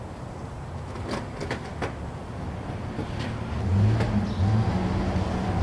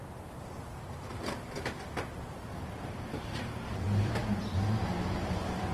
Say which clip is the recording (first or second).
first